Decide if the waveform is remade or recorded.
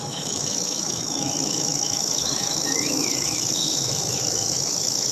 remade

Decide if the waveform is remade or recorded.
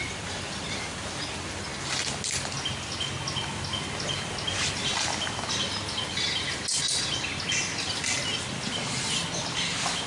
recorded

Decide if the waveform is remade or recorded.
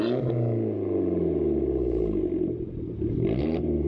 recorded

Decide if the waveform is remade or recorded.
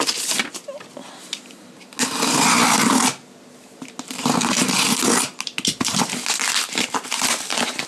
recorded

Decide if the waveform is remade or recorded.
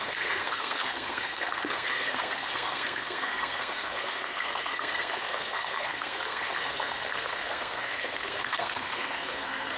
remade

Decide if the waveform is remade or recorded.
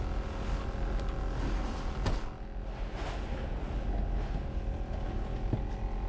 recorded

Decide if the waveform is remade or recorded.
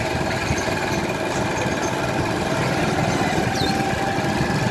recorded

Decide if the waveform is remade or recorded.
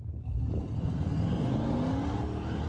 recorded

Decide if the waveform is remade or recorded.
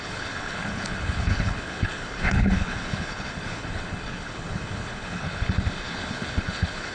remade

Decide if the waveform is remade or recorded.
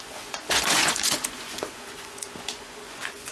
remade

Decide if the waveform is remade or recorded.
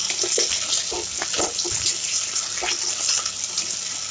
recorded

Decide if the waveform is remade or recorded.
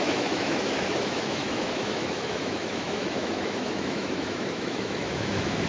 remade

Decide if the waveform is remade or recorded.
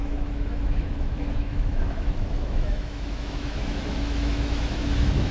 remade